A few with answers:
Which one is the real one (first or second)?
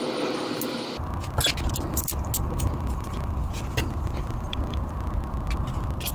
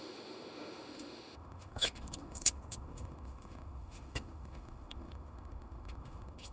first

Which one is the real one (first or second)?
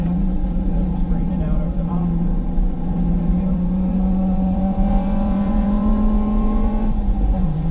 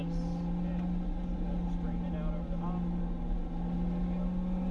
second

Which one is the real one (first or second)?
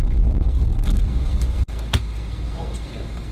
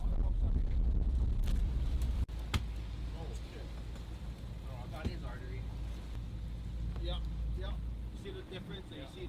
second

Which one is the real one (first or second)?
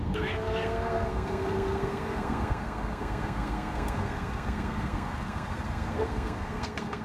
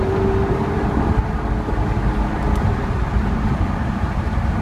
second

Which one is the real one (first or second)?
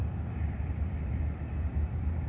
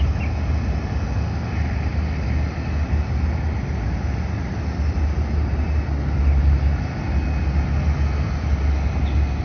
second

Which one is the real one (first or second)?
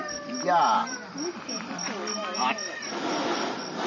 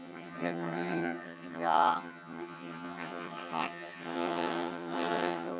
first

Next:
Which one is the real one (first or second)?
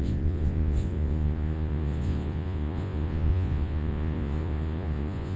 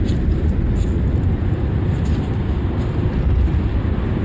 second